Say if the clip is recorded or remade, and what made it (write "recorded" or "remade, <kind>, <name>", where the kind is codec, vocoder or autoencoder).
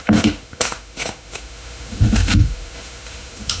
remade, autoencoder, DAC-VAE